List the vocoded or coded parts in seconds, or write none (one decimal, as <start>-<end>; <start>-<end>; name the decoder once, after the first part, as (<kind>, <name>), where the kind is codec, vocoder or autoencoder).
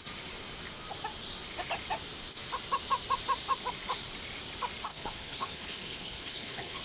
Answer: 4.9-6.8 (codec, HILCodec)